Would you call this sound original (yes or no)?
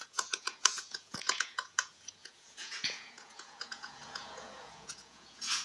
no